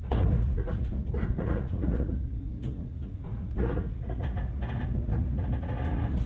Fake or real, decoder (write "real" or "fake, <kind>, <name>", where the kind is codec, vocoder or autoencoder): fake, vocoder, Vocos